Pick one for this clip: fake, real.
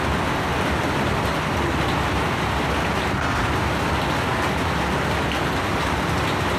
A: real